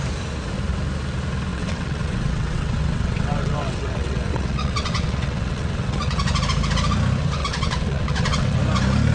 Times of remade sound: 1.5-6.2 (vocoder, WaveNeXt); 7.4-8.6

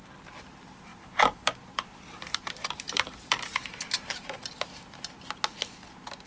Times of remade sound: 0.9-4.7 (vocoder, BigVGAN v2)

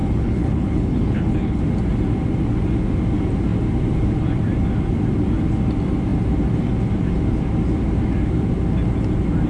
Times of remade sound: 0.0-1.6 (codec, HILCodec)